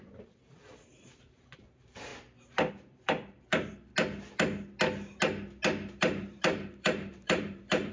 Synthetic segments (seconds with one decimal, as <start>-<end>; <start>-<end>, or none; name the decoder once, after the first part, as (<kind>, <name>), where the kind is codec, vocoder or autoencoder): 0.0-2.1 (vocoder, BigVGAN v2); 2.7-3.9; 6.0-7.9